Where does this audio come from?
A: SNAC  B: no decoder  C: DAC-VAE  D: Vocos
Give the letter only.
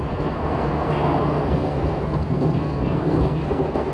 A